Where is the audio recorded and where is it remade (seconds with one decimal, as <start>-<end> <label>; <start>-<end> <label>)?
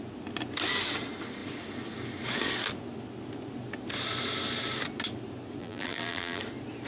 0.0-5.6 recorded; 5.6-6.4 remade; 6.4-6.9 recorded